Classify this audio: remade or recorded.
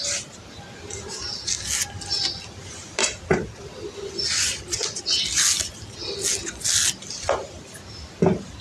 recorded